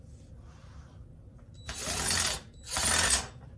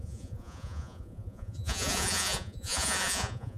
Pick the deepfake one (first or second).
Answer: second